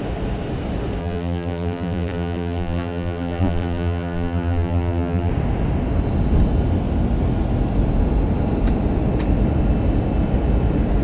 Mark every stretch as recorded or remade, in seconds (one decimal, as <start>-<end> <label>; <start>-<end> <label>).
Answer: 0.0-1.0 recorded; 1.0-5.3 remade; 5.3-11.0 recorded